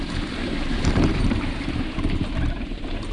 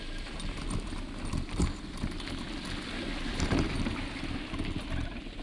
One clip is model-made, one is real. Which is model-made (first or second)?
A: first